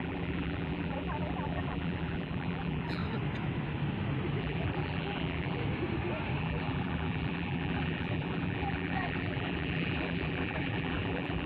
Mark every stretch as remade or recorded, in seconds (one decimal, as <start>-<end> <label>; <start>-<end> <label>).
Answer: 0.0-3.0 remade; 3.0-4.4 recorded; 4.4-5.6 remade; 5.6-6.4 recorded; 6.4-11.5 remade